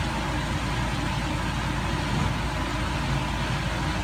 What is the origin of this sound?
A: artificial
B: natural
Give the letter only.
B